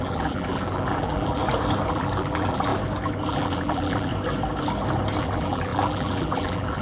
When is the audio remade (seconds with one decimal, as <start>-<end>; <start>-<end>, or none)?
0.0-1.4; 1.9-2.7; 3.3-4.1; 5.2-6.8